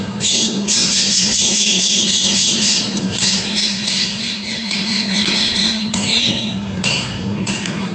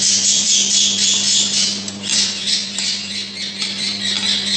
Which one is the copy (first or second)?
first